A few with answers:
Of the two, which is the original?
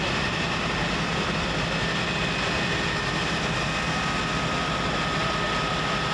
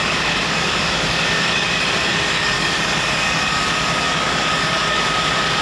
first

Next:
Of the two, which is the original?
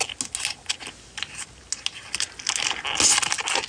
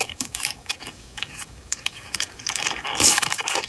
first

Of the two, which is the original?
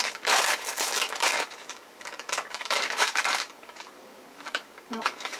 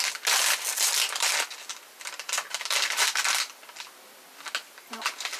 second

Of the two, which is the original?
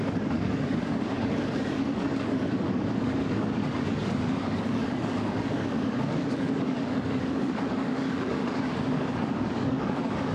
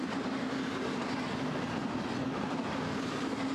second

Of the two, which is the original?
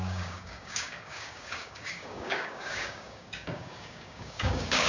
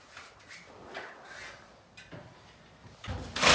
second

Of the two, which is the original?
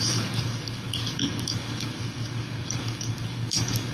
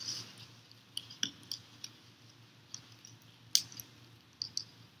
second